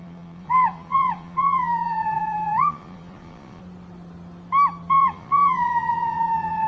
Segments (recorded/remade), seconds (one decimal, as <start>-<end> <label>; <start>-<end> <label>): 0.0-3.6 remade; 3.6-4.9 recorded; 4.9-6.7 remade